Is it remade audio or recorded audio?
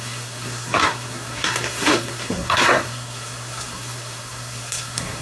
remade